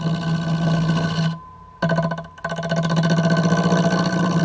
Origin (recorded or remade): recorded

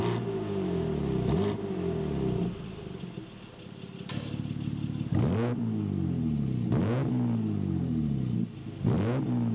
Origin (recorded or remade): recorded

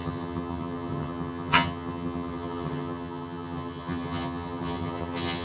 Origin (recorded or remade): remade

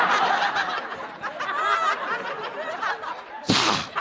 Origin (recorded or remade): recorded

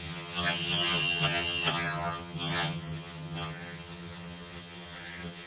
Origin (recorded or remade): remade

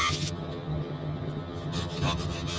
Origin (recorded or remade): remade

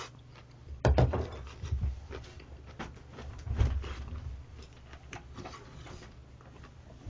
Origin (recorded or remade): recorded